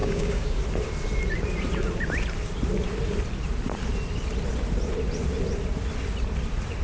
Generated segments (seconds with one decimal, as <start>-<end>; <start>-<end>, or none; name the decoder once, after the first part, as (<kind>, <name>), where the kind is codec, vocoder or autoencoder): 0.0-0.6 (codec, DAC)